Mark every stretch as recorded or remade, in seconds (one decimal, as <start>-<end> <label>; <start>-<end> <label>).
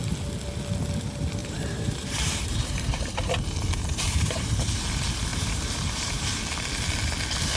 0.0-1.4 recorded; 1.4-4.5 remade; 4.5-5.3 recorded; 5.3-6.4 remade; 6.4-7.6 recorded